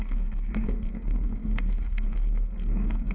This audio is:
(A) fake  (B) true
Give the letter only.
A